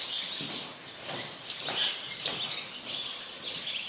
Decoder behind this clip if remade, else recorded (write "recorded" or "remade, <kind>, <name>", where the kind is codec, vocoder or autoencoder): recorded